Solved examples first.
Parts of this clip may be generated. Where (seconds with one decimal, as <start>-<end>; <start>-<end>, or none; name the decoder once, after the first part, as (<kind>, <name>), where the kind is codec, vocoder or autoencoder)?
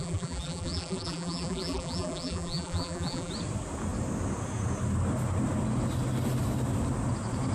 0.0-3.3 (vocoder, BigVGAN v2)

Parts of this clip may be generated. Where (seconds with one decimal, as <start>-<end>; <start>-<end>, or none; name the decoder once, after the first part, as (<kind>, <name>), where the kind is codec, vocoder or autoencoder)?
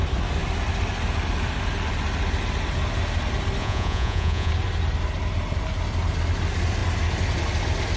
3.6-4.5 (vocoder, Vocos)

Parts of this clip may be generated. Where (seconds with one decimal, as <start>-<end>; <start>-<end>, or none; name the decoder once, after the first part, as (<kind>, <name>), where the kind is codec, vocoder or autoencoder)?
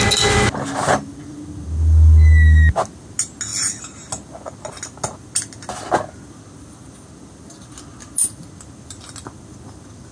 none